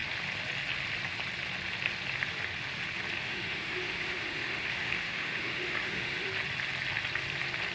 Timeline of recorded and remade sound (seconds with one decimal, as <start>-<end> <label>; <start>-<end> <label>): 0.0-3.2 recorded; 3.2-6.3 remade; 6.3-7.7 recorded

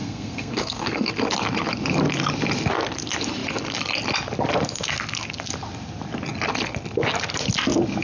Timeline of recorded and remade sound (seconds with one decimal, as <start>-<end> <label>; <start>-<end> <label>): 0.0-1.1 remade; 1.1-8.0 recorded

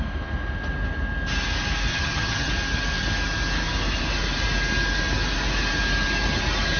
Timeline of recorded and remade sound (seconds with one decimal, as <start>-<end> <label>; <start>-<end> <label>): 0.0-1.9 recorded; 1.9-2.5 remade; 2.5-6.8 recorded